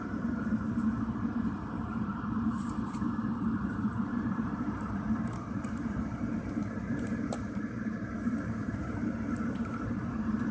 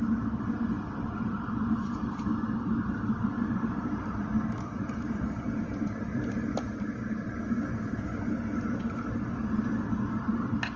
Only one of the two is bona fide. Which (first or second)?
second